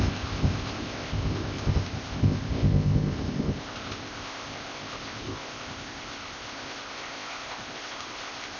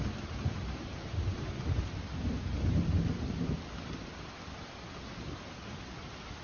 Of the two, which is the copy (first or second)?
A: first